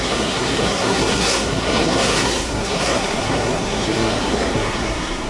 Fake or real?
fake